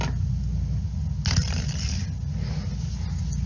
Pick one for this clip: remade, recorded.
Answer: recorded